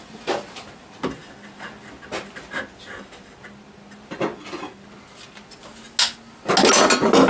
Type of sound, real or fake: real